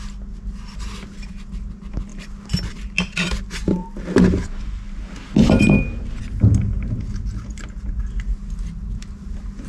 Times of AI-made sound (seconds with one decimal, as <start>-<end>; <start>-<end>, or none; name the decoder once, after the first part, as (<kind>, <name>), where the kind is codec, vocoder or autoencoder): none